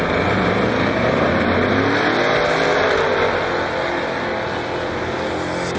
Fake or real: real